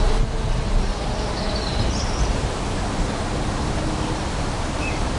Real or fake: real